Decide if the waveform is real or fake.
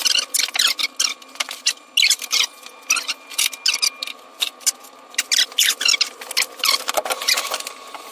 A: real